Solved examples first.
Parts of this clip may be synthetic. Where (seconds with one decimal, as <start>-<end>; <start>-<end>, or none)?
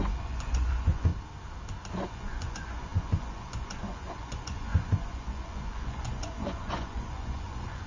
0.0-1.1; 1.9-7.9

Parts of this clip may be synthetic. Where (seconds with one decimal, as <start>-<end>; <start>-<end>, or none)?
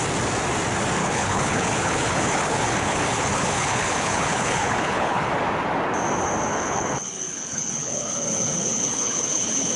1.0-5.3; 6.5-9.8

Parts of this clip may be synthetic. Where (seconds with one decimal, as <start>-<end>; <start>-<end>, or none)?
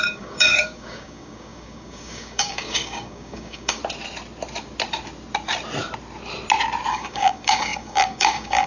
0.0-3.8; 6.9-8.7